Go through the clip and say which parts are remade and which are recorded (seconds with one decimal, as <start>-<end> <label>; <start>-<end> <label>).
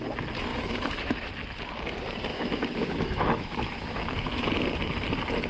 0.0-0.5 recorded; 0.5-1.3 remade; 1.3-2.3 recorded; 2.3-4.5 remade; 4.5-5.5 recorded